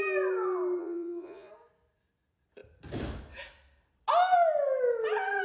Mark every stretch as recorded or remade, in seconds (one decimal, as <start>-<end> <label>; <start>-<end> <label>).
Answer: 0.0-0.8 recorded; 0.8-1.5 remade; 1.5-5.4 recorded

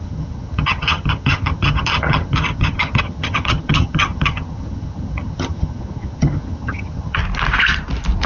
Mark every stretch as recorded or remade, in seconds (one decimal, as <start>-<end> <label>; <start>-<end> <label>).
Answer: 0.0-7.2 remade; 7.2-8.3 recorded

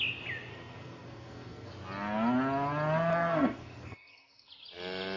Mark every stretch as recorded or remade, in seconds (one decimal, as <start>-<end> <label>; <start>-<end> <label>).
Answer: 0.0-0.5 recorded; 0.5-1.7 remade; 1.7-3.1 recorded; 3.1-4.5 remade; 4.5-5.2 recorded

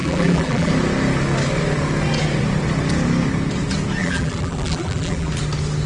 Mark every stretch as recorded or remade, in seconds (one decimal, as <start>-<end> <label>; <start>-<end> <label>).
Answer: 0.0-0.7 remade; 0.7-4.0 recorded; 4.0-5.3 remade; 5.3-5.9 recorded

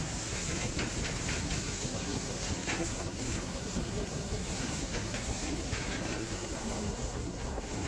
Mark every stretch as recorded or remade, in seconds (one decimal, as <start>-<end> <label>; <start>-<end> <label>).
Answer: 0.0-0.7 remade; 0.7-1.4 recorded; 1.4-7.9 remade

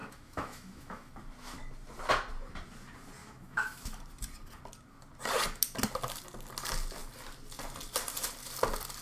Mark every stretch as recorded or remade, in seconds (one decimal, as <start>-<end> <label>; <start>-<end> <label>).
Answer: 0.0-1.1 remade; 1.1-3.2 recorded; 3.2-3.9 remade; 3.9-9.0 recorded

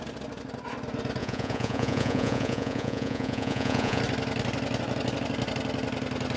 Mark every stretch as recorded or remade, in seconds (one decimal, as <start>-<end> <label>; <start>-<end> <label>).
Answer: 0.0-1.2 recorded; 1.2-4.0 remade; 4.0-6.4 recorded